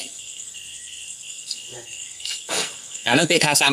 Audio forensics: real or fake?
fake